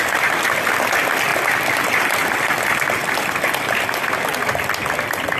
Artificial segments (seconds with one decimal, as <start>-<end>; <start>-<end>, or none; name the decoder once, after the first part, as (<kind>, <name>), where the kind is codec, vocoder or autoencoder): 1.3-2.5 (vocoder, BigVGAN v2); 3.0-4.0